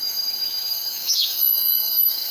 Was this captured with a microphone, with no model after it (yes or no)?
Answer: no